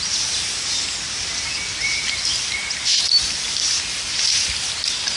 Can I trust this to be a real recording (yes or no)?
yes